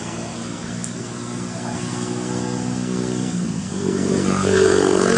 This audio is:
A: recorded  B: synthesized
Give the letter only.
B